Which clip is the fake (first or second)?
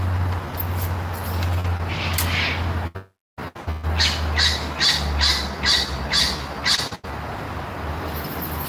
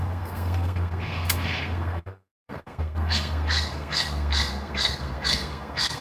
second